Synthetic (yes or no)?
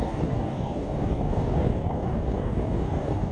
yes